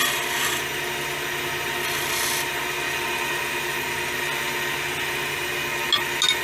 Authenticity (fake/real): real